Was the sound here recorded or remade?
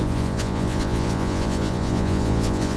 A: remade